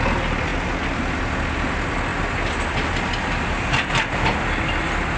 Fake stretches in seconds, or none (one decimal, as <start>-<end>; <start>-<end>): none